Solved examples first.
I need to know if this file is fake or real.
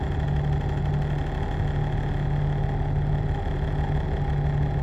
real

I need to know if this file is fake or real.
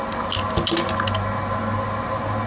real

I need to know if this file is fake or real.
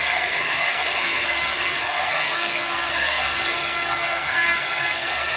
fake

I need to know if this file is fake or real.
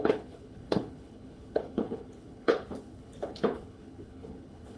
fake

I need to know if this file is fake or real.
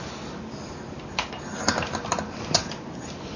real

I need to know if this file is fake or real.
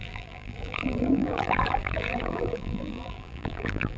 fake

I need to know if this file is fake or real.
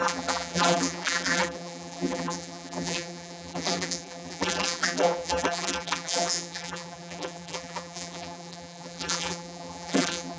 fake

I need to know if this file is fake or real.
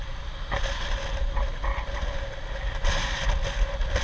real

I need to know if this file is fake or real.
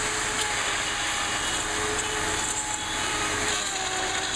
fake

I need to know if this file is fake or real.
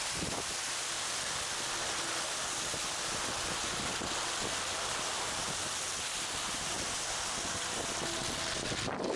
real